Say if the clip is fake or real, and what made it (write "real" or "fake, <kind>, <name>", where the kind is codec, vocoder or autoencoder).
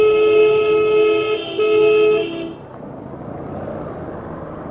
real